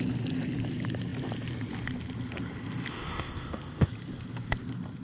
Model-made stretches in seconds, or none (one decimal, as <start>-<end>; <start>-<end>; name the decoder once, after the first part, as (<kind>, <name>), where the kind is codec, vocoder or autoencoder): 2.9-3.9 (codec, ZipCodec)